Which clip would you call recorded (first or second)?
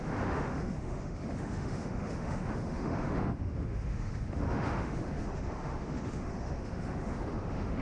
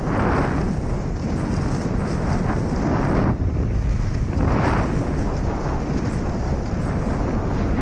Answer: second